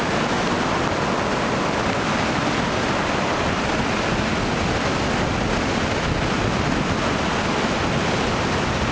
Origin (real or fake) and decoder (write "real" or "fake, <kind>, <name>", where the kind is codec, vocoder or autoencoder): real